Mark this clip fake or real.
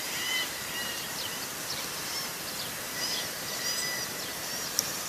fake